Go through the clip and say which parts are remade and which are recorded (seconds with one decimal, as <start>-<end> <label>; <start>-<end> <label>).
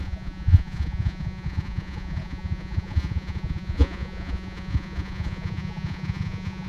0.0-6.7 remade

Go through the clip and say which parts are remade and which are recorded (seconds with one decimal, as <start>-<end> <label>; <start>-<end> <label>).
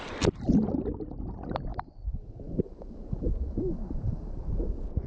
0.0-5.1 recorded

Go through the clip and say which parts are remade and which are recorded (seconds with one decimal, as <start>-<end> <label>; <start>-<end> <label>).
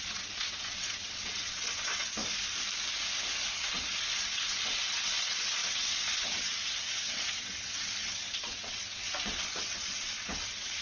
0.0-2.2 remade; 2.2-3.6 recorded; 3.6-10.8 remade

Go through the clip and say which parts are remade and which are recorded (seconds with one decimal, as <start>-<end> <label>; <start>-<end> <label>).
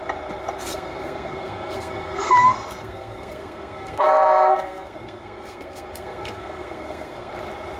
0.0-0.6 recorded; 0.6-2.3 remade; 2.3-2.8 recorded; 2.8-7.3 remade; 7.3-7.8 recorded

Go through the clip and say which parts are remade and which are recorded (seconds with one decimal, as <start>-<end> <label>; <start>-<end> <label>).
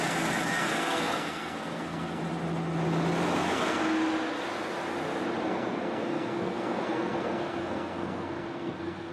0.0-2.2 remade; 2.2-3.4 recorded; 3.4-3.8 remade; 3.8-5.4 recorded; 5.4-9.1 remade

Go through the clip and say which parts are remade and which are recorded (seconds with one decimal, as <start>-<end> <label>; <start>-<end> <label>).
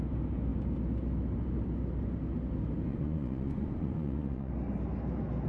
0.0-2.9 recorded; 2.9-4.5 remade; 4.5-5.5 recorded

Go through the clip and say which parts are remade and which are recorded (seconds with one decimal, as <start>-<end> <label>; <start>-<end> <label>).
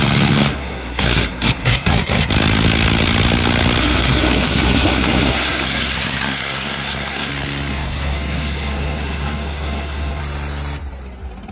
0.0-0.5 recorded; 0.5-2.3 remade; 2.3-3.8 recorded; 3.8-7.3 remade; 7.3-7.7 recorded; 7.7-10.2 remade; 10.2-11.5 recorded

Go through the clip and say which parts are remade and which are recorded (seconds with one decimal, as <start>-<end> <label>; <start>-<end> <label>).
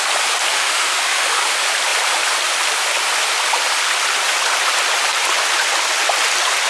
0.0-0.5 recorded; 0.5-1.4 remade; 1.4-6.7 recorded